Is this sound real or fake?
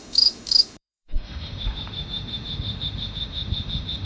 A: fake